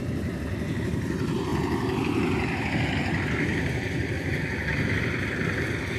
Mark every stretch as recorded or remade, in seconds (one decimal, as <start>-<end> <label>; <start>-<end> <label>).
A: 0.0-3.5 recorded; 3.5-4.3 remade; 4.3-4.7 recorded; 4.7-6.0 remade